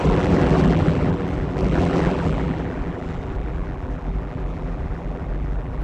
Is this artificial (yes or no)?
yes